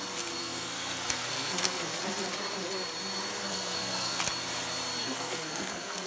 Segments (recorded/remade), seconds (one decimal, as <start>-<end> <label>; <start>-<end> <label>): 0.0-0.4 recorded; 0.4-2.0 remade; 2.0-3.5 recorded; 3.5-4.2 remade; 4.2-5.0 recorded; 5.0-6.1 remade